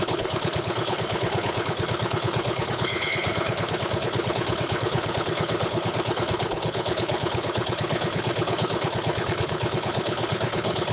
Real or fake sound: fake